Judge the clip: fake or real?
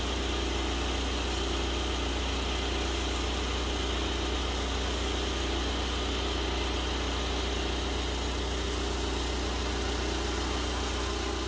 real